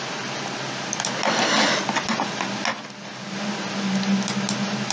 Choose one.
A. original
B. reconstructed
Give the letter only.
A